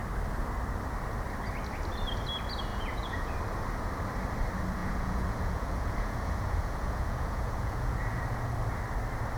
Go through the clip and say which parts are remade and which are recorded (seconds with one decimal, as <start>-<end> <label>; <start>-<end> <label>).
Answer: 0.0-2.7 recorded; 2.7-3.3 remade; 3.3-4.8 recorded; 4.8-8.2 remade; 8.2-9.4 recorded